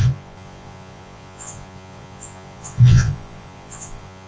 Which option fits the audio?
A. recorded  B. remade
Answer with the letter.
B